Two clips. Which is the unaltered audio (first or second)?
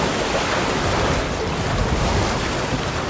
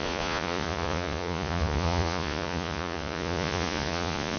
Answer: first